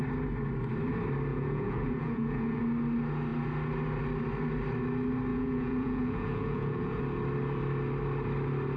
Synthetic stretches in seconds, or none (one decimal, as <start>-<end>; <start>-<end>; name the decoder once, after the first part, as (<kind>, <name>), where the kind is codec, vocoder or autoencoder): 1.3-2.6 (vocoder, Vocos); 5.3-7.0